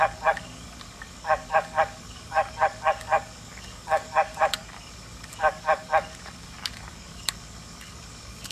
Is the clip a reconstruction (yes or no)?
yes